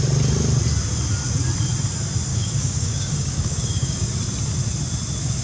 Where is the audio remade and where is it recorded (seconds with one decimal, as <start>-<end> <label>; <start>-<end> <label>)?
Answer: 0.0-2.3 recorded; 2.3-4.1 remade; 4.1-5.4 recorded